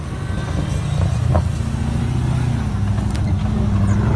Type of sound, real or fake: real